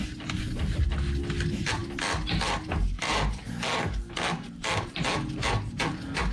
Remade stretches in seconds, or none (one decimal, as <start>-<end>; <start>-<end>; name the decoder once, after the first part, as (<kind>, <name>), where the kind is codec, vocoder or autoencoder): none